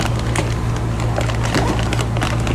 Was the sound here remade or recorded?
recorded